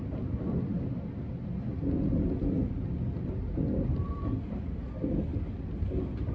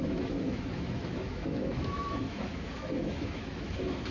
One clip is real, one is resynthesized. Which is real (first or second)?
first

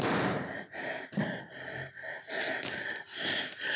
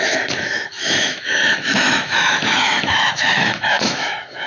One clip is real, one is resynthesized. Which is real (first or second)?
first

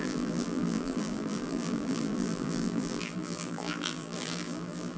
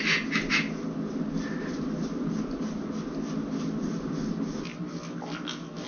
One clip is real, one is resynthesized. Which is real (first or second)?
second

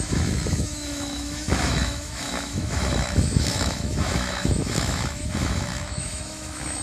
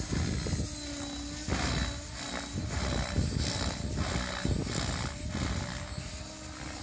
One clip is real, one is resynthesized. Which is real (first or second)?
second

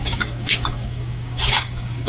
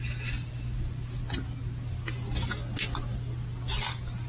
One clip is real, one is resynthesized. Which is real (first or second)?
second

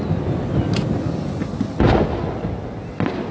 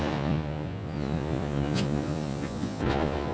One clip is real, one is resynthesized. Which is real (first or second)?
first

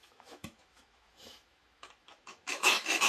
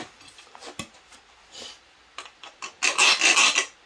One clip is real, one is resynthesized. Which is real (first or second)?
second